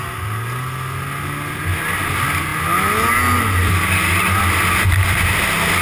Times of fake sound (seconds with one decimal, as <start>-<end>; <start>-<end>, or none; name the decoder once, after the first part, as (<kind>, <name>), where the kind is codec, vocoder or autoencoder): none

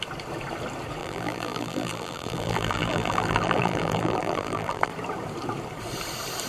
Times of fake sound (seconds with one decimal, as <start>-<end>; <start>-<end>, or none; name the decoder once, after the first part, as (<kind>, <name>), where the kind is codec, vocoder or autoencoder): 1.0-4.9 (vocoder, BigVGAN v2)

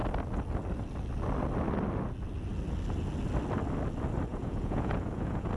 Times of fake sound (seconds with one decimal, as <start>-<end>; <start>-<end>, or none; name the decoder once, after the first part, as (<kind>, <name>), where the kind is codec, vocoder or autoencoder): 4.3-5.6 (vocoder, Vocos)

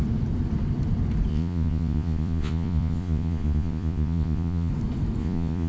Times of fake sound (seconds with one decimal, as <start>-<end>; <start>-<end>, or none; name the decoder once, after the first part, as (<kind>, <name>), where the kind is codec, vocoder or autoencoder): 1.3-4.7 (vocoder, Vocos); 5.2-5.7

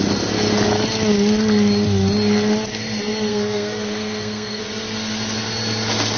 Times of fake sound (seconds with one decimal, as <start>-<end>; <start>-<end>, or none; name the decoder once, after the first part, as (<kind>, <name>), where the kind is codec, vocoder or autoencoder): 3.3-4.6 (codec, SNAC)

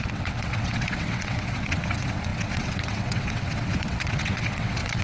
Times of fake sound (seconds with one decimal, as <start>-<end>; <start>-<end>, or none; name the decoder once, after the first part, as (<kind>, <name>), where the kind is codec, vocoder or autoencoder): 0.0-5.0 (vocoder, WaveNeXt)

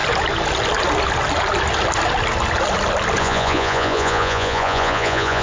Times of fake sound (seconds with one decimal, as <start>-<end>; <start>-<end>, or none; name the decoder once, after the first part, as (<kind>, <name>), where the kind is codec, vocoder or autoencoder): 3.2-5.4 (vocoder, Vocos)

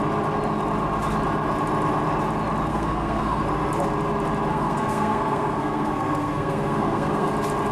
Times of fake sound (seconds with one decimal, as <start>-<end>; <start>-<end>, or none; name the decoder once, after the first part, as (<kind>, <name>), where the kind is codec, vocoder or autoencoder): 2.7-3.4 (codec, SNAC); 4.5-7.3